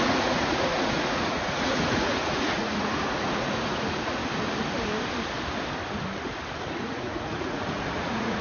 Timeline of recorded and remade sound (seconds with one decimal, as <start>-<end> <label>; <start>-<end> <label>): 0.0-4.2 remade; 4.2-6.7 recorded; 6.7-8.4 remade